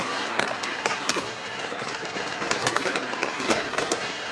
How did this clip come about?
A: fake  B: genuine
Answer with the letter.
A